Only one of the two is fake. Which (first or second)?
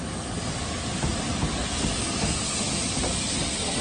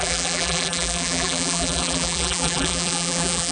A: second